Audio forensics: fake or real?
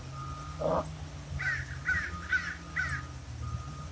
real